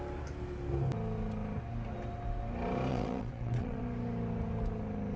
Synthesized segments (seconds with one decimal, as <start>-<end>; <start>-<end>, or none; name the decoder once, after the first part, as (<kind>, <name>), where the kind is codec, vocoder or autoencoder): 2.9-3.8 (vocoder, WaveNeXt)